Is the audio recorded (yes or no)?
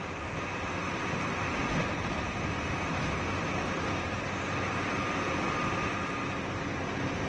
yes